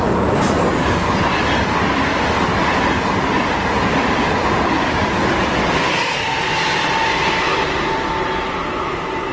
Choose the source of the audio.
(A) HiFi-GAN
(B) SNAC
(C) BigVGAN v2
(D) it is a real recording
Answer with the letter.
D